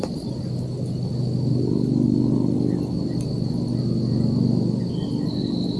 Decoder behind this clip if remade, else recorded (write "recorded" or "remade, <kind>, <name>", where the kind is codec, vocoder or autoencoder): recorded